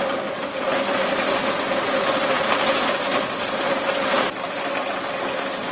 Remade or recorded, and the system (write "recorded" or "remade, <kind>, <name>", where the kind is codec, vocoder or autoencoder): recorded